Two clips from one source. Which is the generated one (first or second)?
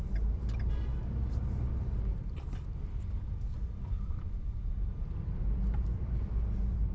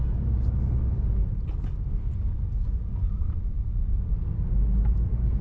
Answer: first